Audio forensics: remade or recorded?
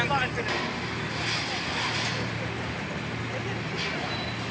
recorded